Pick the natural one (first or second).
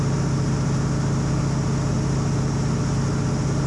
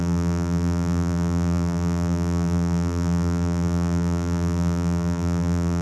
first